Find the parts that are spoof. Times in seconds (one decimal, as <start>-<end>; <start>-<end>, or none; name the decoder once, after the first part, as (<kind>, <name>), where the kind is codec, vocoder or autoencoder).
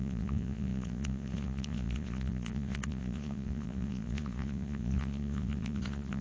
0.0-6.2 (vocoder, Vocos)